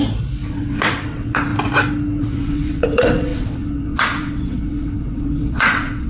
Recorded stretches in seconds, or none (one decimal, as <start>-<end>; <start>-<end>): 0.0-0.5; 1.5-2.2